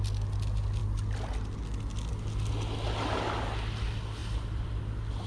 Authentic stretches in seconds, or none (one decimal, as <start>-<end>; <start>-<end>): 0.0-4.2; 4.8-5.3